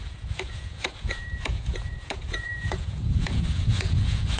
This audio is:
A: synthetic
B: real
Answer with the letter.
A